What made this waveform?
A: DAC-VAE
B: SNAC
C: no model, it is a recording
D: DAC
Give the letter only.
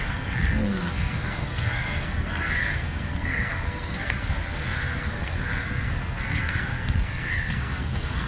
B